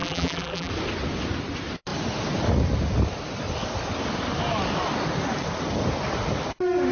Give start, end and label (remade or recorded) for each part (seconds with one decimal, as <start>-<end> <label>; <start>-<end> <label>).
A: 0.0-0.7 remade; 0.7-6.9 recorded